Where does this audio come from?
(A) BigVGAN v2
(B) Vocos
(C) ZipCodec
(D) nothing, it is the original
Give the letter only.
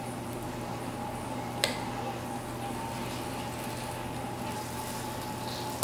D